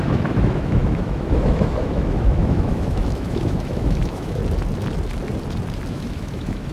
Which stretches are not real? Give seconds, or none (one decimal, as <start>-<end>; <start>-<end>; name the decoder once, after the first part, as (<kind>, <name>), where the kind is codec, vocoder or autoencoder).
0.0-4.4 (autoencoder, DAC-VAE); 5.9-6.7